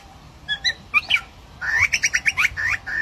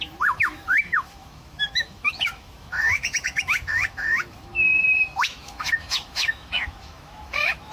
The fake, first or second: second